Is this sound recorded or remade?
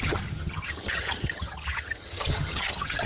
remade